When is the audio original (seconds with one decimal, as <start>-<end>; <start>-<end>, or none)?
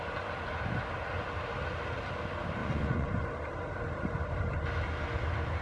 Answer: 0.0-2.6; 3.1-5.6